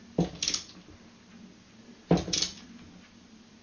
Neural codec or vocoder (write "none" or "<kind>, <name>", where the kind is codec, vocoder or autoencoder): none